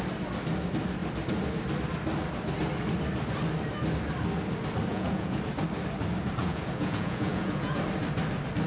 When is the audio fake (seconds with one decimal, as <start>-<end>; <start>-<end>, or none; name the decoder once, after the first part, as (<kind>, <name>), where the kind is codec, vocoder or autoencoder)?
4.9-5.4 (vocoder, Vocos); 6.4-7.8